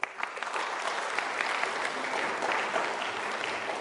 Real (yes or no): yes